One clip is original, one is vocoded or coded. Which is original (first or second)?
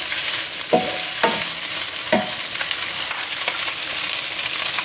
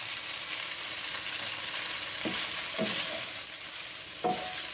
second